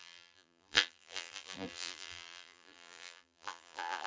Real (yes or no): no